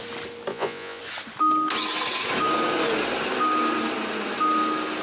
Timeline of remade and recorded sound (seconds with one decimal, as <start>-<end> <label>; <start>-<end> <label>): 0.0-0.5 recorded; 0.5-1.0 remade; 1.0-5.0 recorded